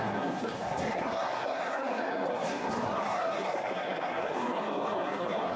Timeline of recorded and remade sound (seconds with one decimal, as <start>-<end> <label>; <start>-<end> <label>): 0.0-5.6 remade